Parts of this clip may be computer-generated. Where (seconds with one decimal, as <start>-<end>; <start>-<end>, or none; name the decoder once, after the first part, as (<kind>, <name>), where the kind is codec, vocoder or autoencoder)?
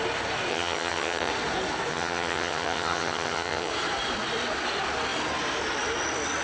0.5-1.3 (vocoder, HiFi-GAN); 1.9-3.7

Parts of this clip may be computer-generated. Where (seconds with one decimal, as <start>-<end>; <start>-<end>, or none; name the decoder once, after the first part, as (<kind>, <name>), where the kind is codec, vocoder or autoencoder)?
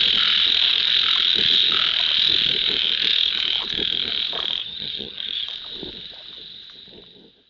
4.6-5.5 (vocoder, HiFi-GAN)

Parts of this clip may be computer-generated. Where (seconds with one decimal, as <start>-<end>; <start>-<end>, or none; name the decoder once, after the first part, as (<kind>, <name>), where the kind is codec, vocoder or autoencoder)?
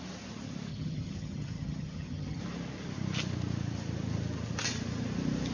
0.7-2.4 (vocoder, HiFi-GAN)